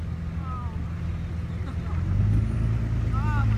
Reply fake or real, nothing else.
real